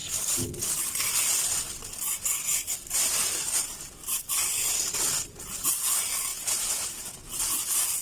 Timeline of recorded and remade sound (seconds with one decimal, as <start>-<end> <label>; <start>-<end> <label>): 0.0-6.3 recorded; 6.3-7.3 remade; 7.3-8.0 recorded